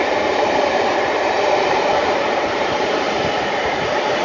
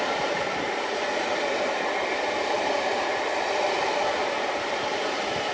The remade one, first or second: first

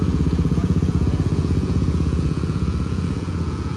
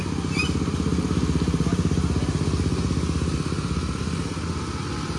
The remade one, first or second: first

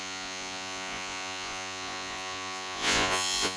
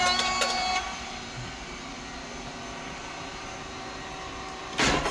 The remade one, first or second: first